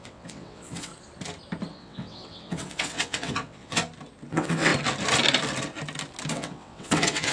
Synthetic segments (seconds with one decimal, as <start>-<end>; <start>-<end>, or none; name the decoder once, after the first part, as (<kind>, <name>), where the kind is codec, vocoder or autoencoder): 0.0-0.9 (vocoder, WaveNeXt); 1.7-3.8; 4.3-4.7; 6.3-7.3